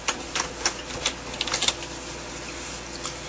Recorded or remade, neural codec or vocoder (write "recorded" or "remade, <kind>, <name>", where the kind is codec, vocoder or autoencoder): recorded